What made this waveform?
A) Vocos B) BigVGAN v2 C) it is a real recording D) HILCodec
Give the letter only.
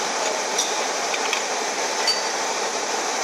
B